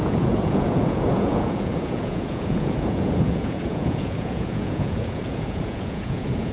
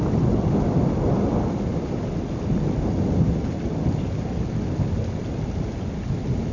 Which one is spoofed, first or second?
first